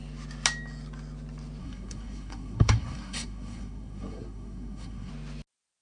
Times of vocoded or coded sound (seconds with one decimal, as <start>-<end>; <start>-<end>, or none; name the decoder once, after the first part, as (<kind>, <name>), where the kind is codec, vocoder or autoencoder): 1.6-5.1 (codec, SNAC)